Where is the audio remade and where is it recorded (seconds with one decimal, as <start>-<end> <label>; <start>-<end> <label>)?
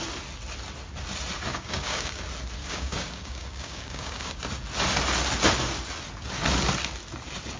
0.0-1.5 recorded; 1.5-2.2 remade; 2.2-2.6 recorded; 2.6-4.4 remade; 4.4-7.6 recorded